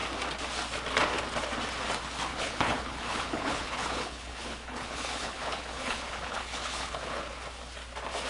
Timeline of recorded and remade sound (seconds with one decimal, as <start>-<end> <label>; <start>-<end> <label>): 0.0-2.3 recorded; 2.3-7.3 remade; 7.3-8.3 recorded